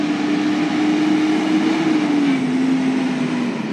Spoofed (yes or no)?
no